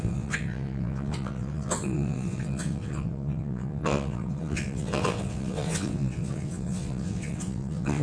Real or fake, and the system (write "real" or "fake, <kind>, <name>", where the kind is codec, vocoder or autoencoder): fake, vocoder, WaveNeXt